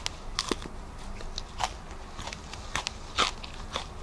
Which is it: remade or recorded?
recorded